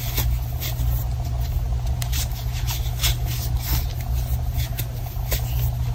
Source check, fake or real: real